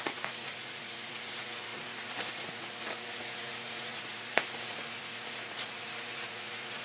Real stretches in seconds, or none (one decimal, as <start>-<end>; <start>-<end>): none